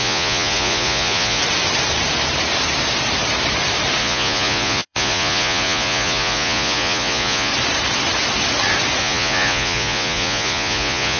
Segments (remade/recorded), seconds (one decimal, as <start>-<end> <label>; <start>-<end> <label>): 0.0-1.4 remade; 1.4-4.0 recorded; 4.0-7.5 remade; 7.5-9.0 recorded; 9.0-11.2 remade